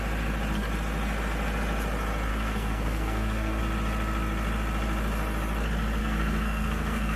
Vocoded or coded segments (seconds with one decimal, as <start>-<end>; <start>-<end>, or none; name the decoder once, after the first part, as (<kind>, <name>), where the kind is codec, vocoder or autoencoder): 2.3-3.6 (codec, SNAC); 6.0-7.2